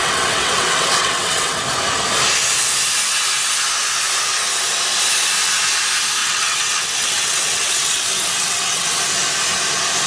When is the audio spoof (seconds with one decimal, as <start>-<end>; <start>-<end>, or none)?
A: 0.0-1.6; 6.2-9.0